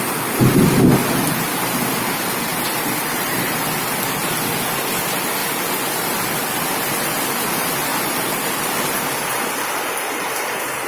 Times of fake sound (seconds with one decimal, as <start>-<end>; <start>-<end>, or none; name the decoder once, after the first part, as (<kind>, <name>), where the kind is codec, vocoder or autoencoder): 1.0-1.5 (vocoder, BigVGAN v2); 2.5-3.7; 7.9-9.8